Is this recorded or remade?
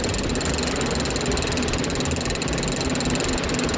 recorded